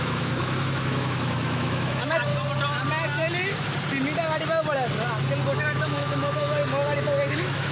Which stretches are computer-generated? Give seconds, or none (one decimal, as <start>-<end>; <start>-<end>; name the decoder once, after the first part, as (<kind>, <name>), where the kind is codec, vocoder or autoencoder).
0.0-2.3 (autoencoder, DAC-VAE); 5.6-6.6; 7.3-7.7